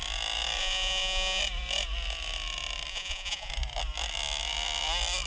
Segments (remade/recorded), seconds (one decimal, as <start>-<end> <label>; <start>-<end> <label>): 0.0-0.6 recorded; 0.6-1.4 remade; 1.4-2.9 recorded; 2.9-3.5 remade; 3.5-5.3 recorded